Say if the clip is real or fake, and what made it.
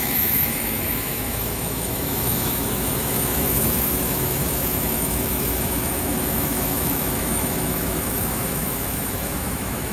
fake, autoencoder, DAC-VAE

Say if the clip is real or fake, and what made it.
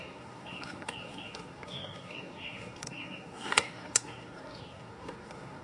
fake, codec, SNAC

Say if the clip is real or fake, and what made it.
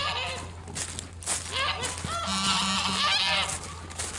real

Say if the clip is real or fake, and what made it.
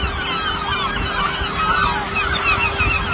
real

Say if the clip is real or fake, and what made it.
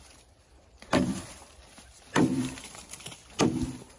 fake, vocoder, BigVGAN v2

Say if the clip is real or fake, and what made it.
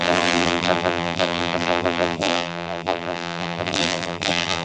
fake, vocoder, BigVGAN v2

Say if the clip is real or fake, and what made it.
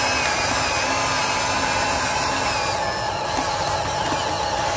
real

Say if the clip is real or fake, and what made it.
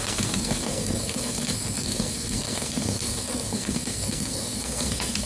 fake, codec, SNAC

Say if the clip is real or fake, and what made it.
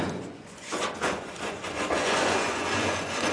fake, vocoder, Vocos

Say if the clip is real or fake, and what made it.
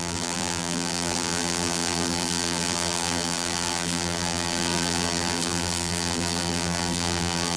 fake, vocoder, BigVGAN v2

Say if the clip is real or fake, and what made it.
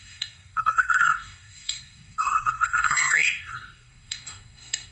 fake, codec, SNAC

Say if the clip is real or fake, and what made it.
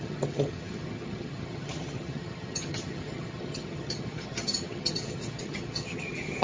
fake, vocoder, HiFi-GAN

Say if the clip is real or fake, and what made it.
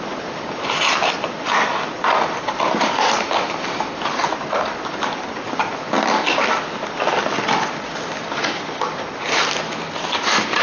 real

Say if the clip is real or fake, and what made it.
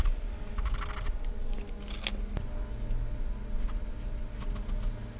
real